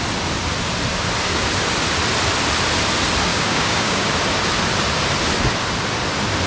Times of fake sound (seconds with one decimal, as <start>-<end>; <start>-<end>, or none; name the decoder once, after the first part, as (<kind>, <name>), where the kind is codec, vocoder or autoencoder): 3.3-4.1 (codec, DAC)